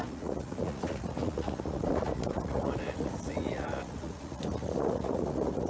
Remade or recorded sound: remade